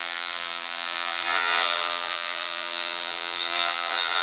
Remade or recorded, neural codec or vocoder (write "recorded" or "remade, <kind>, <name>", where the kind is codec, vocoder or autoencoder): remade, vocoder, BigVGAN v2